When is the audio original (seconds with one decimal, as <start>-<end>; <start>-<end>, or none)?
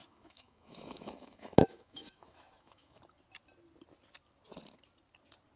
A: 3.0-5.6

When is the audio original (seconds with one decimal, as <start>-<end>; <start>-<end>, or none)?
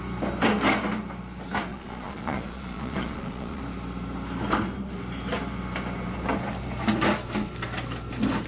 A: 0.0-1.7; 3.6-8.5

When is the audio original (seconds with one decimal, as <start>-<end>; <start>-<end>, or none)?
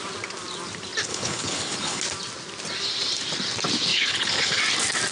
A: 0.0-1.1; 2.0-3.9; 4.6-5.1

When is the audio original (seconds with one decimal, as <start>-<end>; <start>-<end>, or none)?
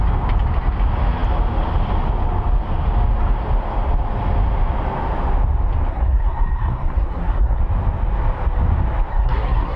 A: 0.0-5.9; 7.6-9.1